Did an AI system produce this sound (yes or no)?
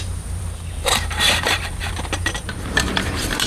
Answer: yes